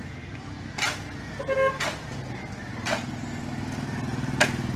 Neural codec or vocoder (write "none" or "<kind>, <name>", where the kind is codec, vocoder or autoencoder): none